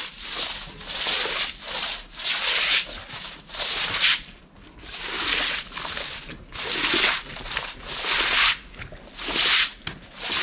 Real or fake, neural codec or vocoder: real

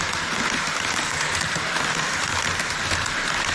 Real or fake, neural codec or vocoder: real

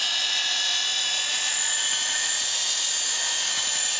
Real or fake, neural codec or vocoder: fake, vocoder, Vocos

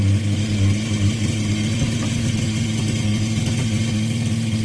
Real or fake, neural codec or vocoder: real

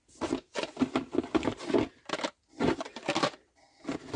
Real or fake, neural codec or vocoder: real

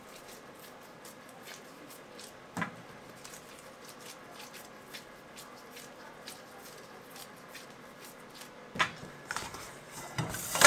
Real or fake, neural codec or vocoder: real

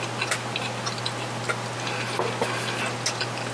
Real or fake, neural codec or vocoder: real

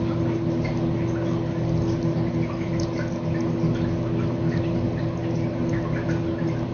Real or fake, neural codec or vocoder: real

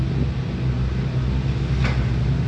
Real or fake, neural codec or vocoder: real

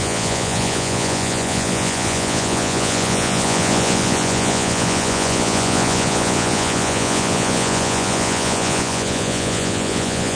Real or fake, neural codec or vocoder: fake, vocoder, Vocos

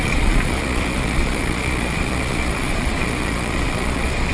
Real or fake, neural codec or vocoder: fake, vocoder, Vocos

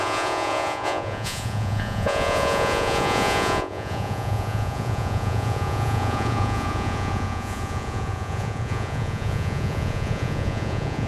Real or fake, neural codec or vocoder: fake, vocoder, Vocos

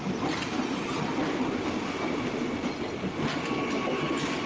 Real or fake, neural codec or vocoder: real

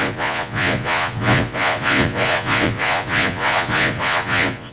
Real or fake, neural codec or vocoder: fake, vocoder, Vocos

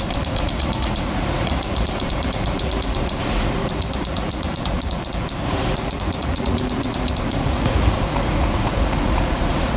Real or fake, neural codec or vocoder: fake, vocoder, Vocos